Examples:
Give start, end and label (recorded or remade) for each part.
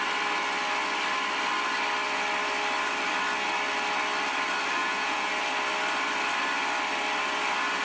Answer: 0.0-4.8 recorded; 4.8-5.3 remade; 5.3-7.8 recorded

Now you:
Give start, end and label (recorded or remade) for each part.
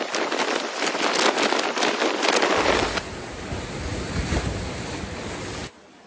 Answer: 0.0-6.1 recorded